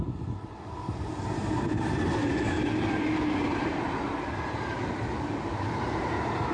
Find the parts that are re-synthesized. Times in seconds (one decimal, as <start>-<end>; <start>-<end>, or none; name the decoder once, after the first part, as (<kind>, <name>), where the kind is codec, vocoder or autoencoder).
0.0-2.7 (vocoder, BigVGAN v2); 6.0-6.5